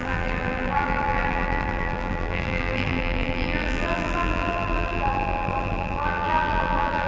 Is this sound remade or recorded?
remade